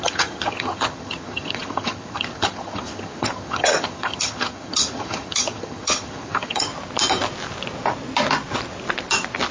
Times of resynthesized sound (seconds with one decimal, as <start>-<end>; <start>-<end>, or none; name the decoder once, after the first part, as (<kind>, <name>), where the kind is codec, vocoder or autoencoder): 0.0-6.7 (vocoder, HiFi-GAN)